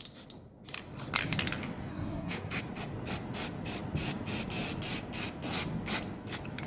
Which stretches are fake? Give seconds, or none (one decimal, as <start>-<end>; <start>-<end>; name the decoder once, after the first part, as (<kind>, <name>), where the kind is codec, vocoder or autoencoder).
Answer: 1.9-2.5 (codec, SNAC)